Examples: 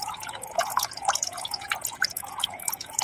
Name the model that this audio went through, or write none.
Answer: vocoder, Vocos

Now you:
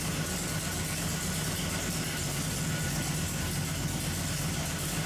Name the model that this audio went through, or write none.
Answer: none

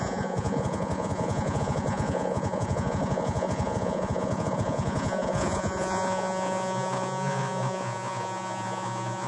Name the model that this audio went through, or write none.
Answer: vocoder, Vocos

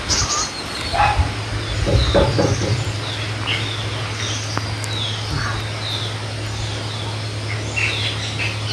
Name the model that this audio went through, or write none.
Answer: none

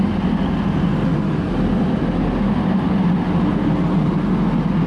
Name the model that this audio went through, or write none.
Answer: none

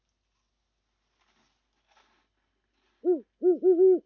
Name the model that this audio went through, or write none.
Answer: none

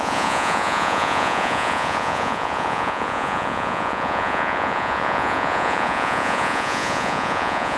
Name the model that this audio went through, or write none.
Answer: vocoder, Vocos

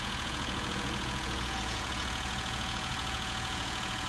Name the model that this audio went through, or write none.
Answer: vocoder, Vocos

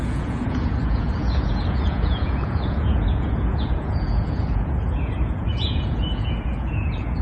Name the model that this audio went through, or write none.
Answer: vocoder, Vocos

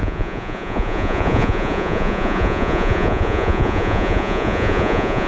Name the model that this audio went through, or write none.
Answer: vocoder, Vocos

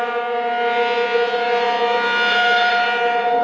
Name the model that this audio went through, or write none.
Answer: vocoder, Vocos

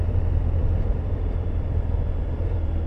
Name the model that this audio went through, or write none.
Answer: none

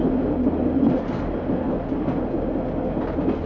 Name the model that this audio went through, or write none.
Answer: none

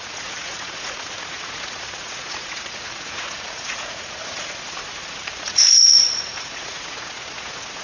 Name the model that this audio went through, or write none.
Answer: vocoder, Vocos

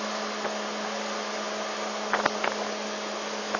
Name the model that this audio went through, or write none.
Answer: none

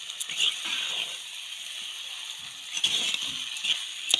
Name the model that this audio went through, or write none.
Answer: none